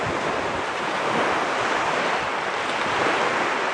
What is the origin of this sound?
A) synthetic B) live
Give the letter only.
B